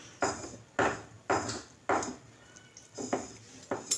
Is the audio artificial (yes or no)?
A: no